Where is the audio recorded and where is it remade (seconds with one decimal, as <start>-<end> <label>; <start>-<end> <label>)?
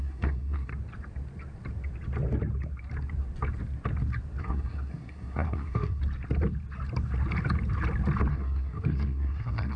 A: 0.0-0.7 remade; 0.7-4.4 recorded; 4.4-6.0 remade; 6.0-8.3 recorded; 8.3-9.8 remade